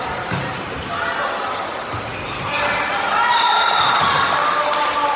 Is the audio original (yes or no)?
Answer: yes